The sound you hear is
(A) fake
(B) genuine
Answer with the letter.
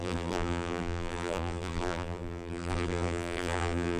A